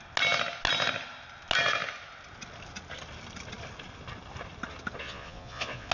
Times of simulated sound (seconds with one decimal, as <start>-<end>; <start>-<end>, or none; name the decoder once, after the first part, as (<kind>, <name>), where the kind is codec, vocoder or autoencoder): 5.0-5.9 (vocoder, Vocos)